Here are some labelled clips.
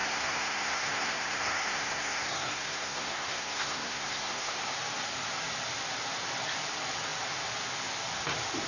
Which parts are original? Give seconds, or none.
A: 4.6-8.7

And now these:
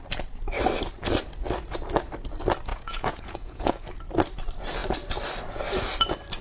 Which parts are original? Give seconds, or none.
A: 0.0-2.7; 3.8-6.4

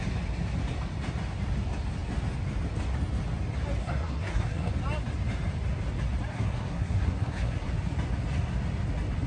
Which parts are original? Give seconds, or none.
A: 0.0-3.8; 4.7-6.3; 7.7-9.3